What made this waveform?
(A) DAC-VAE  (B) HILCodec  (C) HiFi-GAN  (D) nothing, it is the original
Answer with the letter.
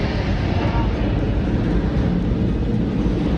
D